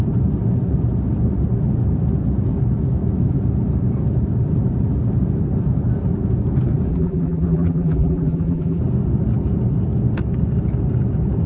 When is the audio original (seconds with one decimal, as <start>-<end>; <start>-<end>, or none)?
0.0-6.9; 8.8-11.5